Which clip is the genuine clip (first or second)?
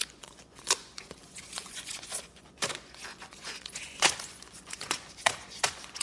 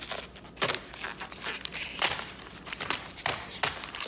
second